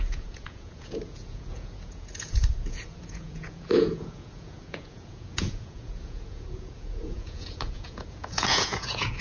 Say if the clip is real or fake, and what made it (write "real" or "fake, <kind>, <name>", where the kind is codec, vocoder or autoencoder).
fake, vocoder, Vocos